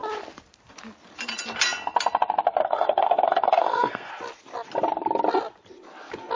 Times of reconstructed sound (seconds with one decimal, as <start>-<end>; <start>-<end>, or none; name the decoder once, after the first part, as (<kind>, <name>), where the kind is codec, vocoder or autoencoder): 2.6-4.1 (codec, SNAC)